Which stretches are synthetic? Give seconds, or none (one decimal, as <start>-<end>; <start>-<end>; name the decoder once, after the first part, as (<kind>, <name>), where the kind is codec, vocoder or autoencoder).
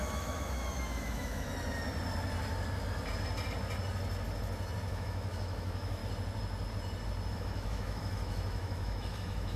0.0-1.5 (autoencoder, DAC-VAE); 4.9-6.0; 7.3-9.6